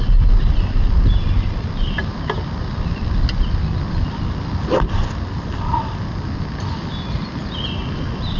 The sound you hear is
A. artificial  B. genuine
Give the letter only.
B